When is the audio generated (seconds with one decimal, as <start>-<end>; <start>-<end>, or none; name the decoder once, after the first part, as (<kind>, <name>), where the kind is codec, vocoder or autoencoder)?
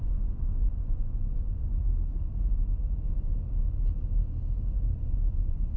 0.0-1.8 (vocoder, Vocos); 5.3-5.8